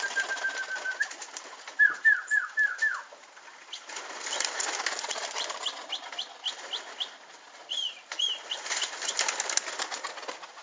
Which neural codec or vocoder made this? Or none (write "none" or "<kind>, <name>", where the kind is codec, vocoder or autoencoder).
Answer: none